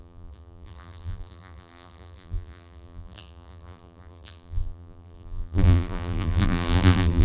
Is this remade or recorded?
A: remade